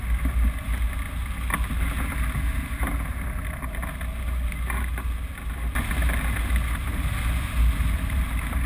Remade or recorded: recorded